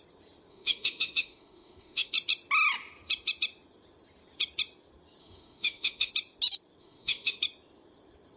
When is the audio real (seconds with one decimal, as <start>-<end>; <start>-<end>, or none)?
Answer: 0.0-0.5; 2.1-5.2; 6.1-6.8; 7.4-8.4